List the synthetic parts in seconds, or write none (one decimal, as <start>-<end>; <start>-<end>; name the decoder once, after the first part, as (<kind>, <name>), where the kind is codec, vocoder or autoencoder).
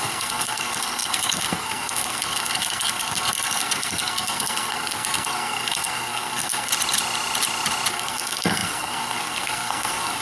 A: 0.0-6.7 (codec, SNAC); 7.9-10.2